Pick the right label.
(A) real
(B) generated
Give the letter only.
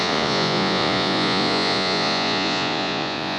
B